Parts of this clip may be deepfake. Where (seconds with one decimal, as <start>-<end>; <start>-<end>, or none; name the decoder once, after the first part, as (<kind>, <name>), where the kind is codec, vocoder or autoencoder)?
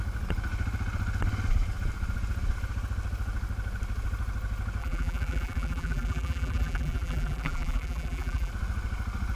4.8-8.5 (vocoder, BigVGAN v2)